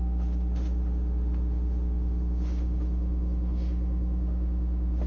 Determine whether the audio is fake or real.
fake